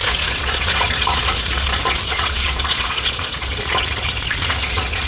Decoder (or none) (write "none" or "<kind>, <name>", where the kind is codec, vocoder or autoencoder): vocoder, Vocos